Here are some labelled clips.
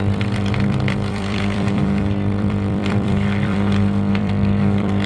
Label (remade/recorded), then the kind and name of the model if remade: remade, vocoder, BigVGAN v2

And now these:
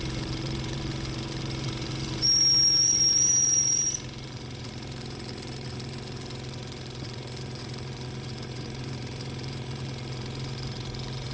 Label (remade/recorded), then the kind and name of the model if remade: remade, vocoder, BigVGAN v2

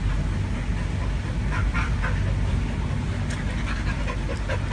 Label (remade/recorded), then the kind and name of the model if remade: recorded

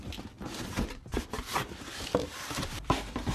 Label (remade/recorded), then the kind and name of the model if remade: remade, vocoder, BigVGAN v2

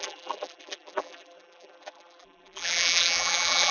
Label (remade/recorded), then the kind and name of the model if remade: remade, vocoder, BigVGAN v2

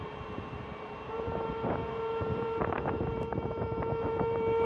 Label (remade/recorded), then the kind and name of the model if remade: remade, vocoder, BigVGAN v2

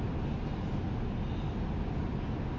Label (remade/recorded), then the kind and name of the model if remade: recorded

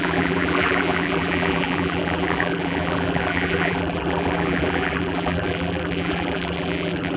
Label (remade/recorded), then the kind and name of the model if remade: remade, vocoder, BigVGAN v2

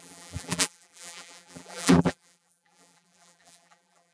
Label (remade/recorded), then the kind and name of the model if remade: remade, vocoder, BigVGAN v2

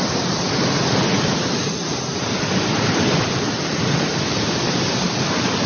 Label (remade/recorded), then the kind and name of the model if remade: remade, vocoder, BigVGAN v2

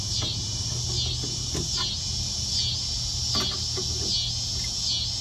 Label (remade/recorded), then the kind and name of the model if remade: recorded